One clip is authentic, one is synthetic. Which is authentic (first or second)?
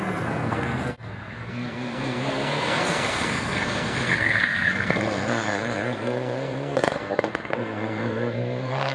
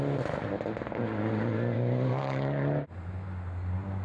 second